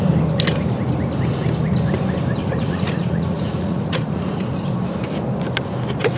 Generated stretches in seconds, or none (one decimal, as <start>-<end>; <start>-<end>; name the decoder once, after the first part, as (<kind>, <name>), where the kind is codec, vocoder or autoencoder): 2.4-4.3 (vocoder, Vocos)